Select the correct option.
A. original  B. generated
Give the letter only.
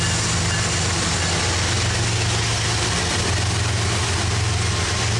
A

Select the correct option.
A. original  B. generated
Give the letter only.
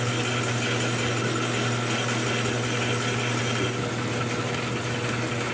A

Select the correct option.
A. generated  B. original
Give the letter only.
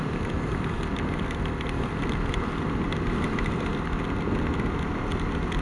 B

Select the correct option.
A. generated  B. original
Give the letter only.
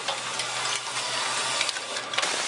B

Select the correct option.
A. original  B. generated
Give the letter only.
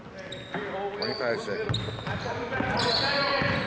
A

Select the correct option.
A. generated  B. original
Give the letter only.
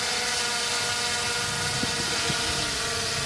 B